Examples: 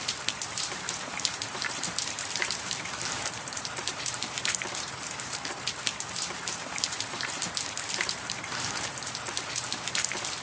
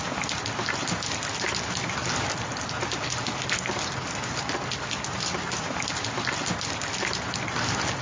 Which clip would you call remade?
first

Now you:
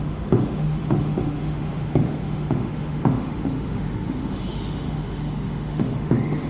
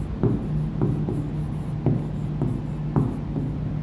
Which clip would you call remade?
first